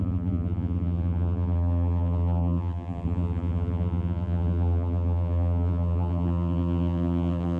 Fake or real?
fake